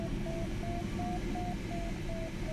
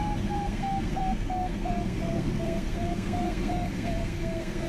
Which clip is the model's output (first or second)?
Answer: second